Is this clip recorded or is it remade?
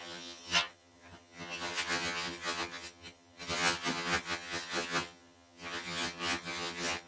remade